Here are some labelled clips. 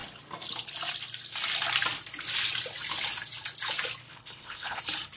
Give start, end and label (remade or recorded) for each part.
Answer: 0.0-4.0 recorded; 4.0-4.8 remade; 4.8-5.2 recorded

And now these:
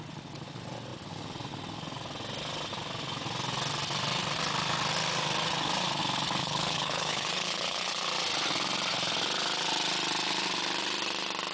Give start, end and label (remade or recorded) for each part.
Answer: 0.0-6.4 recorded; 6.4-8.0 remade; 8.0-11.5 recorded